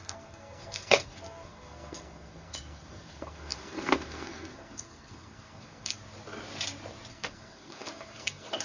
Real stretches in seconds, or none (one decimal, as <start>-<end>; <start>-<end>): 6.0-7.1